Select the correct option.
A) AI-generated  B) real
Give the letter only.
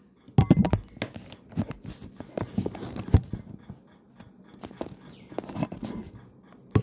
B